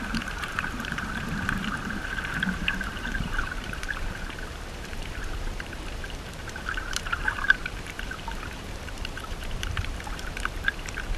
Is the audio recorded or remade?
remade